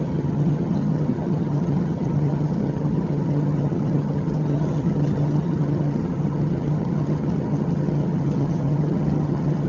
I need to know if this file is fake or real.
fake